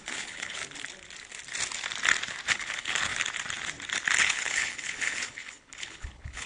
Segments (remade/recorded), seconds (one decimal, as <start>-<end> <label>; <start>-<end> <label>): 0.0-0.6 remade; 0.6-2.5 recorded; 2.5-3.1 remade; 3.1-4.2 recorded; 4.2-6.5 remade